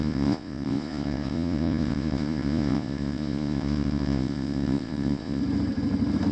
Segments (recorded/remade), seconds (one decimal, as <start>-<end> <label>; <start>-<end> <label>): 0.0-5.4 remade; 5.4-6.3 recorded